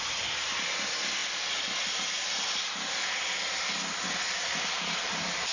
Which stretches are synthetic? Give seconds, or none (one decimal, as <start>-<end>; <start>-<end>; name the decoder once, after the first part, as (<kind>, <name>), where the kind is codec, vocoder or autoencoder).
none